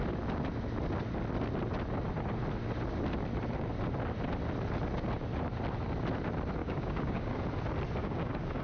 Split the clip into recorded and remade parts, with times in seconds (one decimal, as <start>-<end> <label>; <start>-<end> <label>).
0.0-6.6 recorded; 6.6-7.3 remade; 7.3-8.0 recorded; 8.0-8.6 remade